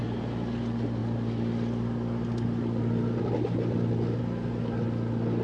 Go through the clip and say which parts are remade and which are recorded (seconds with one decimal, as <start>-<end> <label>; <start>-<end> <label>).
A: 0.0-5.4 recorded